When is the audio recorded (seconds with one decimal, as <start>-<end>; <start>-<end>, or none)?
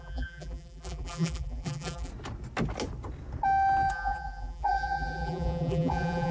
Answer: 2.1-3.9